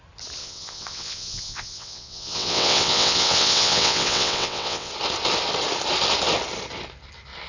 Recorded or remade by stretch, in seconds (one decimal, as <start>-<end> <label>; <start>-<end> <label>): 0.0-0.4 recorded; 0.4-4.9 remade; 4.9-7.5 recorded